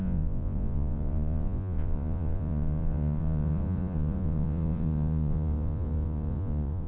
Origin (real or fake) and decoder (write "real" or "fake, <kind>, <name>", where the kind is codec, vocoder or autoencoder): fake, vocoder, Vocos